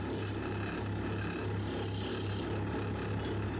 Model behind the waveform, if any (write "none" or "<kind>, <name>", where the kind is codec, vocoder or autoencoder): none